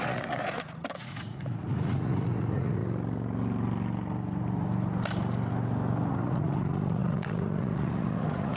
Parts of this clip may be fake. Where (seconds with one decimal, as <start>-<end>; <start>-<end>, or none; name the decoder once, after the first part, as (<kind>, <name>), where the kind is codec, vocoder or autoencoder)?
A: 0.0-2.8 (vocoder, Vocos); 6.1-8.6